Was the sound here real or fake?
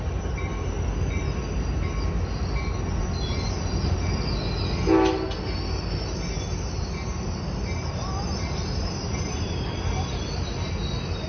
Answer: real